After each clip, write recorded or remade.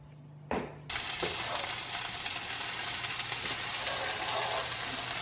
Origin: recorded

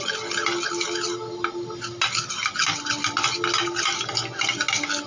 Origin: recorded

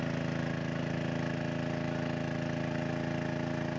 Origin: recorded